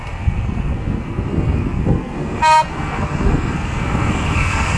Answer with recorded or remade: remade